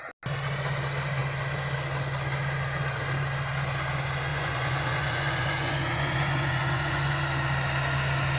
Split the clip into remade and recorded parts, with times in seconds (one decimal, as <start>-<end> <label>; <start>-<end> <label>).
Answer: 0.0-4.3 recorded; 4.3-7.2 remade; 7.2-8.4 recorded